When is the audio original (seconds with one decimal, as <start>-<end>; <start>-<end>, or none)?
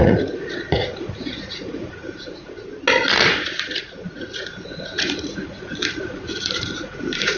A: 2.7-3.3